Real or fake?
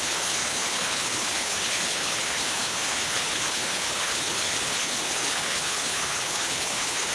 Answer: fake